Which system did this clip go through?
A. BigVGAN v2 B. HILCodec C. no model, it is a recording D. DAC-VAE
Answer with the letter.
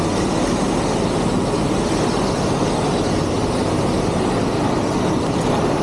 C